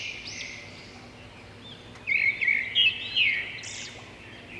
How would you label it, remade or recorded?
recorded